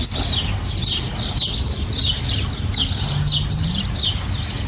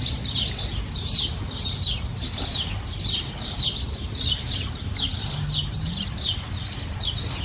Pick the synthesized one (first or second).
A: second